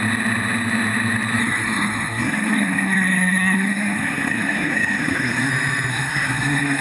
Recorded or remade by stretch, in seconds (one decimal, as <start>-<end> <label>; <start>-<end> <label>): 0.0-1.4 recorded; 1.4-5.5 remade; 5.5-5.9 recorded; 5.9-6.8 remade